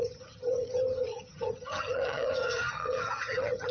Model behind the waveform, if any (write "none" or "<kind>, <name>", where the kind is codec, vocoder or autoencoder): vocoder, HiFi-GAN